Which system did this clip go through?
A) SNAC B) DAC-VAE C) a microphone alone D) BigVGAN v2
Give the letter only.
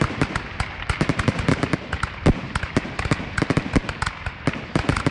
C